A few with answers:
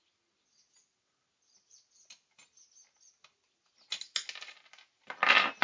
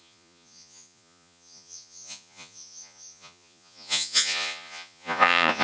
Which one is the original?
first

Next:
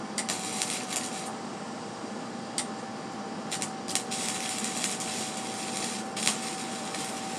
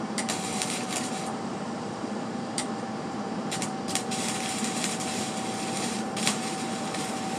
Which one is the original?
first